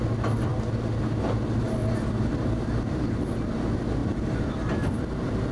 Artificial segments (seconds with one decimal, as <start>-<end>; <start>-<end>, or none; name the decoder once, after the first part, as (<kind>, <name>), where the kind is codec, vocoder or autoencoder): 1.8-3.3 (vocoder, BigVGAN v2); 4.0-4.8